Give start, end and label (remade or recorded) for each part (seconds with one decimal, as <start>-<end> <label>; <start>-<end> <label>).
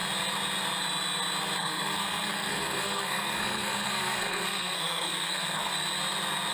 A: 0.0-1.6 recorded; 1.6-5.7 remade; 5.7-6.5 recorded